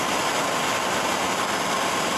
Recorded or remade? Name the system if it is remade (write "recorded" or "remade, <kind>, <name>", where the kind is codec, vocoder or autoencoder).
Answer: recorded